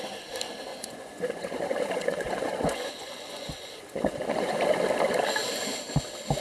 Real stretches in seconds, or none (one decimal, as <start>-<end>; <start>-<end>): 0.0-0.7; 4.5-6.4

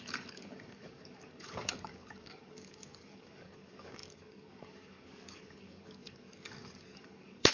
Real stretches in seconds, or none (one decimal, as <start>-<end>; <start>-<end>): none

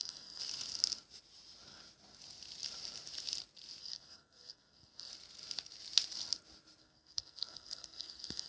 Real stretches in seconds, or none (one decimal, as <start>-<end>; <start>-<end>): 0.4-3.8; 5.1-6.8

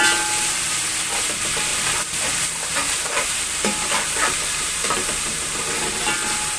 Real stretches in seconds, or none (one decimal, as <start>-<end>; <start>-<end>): 0.0-1.7; 5.7-6.6

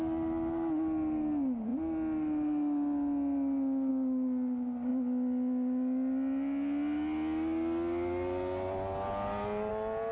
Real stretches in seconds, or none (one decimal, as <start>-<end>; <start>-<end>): 0.0-10.1

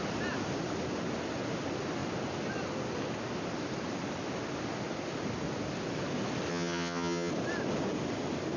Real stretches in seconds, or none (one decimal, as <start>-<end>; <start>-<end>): 0.0-6.5; 7.3-8.6

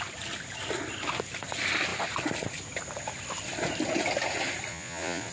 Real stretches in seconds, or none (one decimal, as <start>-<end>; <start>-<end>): 0.0-4.7

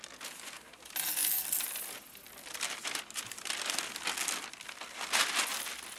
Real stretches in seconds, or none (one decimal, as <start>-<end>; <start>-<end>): 0.0-6.0